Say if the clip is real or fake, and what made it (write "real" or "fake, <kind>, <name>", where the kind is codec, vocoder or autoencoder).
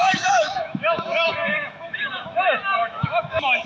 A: fake, autoencoder, DAC-VAE